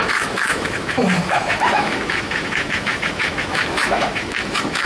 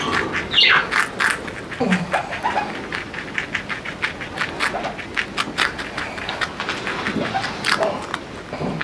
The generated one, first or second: first